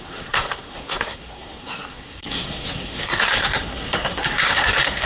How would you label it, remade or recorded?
remade